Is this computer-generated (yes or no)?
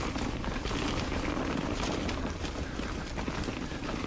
no